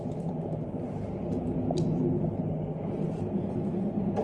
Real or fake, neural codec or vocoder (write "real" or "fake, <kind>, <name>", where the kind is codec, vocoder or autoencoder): real